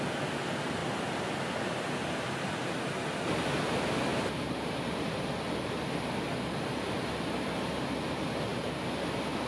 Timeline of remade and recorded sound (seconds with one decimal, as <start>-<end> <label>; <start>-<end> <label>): 0.0-9.5 recorded